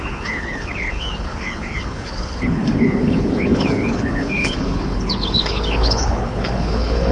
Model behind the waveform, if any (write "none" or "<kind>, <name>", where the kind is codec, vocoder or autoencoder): codec, HILCodec